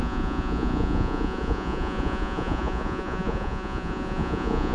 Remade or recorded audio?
remade